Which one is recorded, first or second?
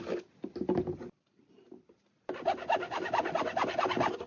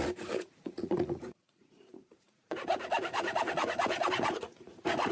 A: first